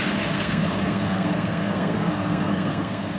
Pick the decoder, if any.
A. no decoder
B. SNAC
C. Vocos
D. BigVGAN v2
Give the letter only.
B